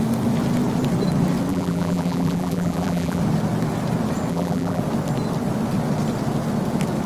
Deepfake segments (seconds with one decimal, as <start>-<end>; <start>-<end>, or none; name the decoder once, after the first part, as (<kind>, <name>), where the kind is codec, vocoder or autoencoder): 1.5-3.2 (vocoder, BigVGAN v2); 4.3-4.8